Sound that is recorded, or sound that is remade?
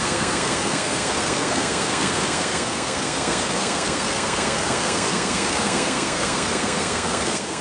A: remade